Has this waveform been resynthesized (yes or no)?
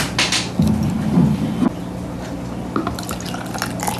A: no